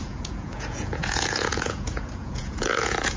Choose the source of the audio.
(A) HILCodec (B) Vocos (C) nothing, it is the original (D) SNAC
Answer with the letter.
B